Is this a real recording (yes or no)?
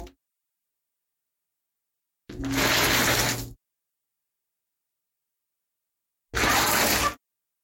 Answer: yes